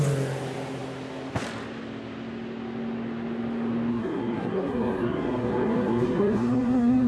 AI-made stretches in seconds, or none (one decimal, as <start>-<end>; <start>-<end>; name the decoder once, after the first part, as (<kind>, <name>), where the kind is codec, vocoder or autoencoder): 3.9-7.1 (codec, SNAC)